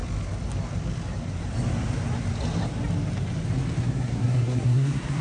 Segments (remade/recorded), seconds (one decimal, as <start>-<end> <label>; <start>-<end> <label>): 0.0-3.8 recorded; 3.8-5.2 remade